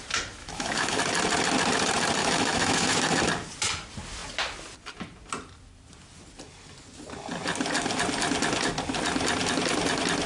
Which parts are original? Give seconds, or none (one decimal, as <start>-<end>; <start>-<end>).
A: 0.0-0.4; 1.0-2.2; 3.2-10.3